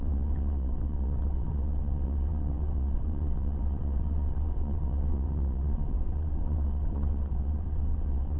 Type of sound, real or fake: fake